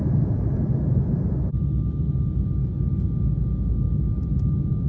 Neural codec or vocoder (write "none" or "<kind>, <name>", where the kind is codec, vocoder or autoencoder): none